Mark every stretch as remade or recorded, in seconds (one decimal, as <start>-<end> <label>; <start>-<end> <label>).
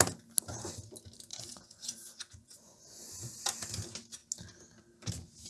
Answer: 0.0-1.3 recorded; 1.3-3.4 remade; 3.4-5.5 recorded